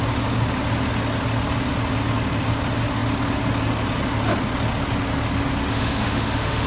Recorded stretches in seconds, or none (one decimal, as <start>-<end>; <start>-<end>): 0.0-5.6